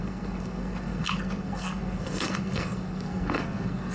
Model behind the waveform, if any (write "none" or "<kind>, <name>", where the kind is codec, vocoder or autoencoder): codec, SNAC